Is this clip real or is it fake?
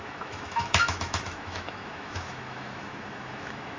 fake